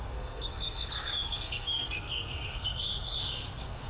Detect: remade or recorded remade